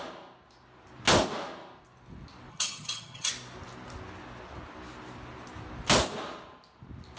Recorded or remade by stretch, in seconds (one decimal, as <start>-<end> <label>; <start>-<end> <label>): 0.0-2.5 recorded; 2.5-3.3 remade; 3.3-7.2 recorded